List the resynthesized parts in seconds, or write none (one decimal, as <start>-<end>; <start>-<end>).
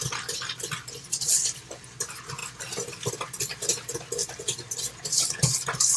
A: 2.4-3.1; 4.2-5.6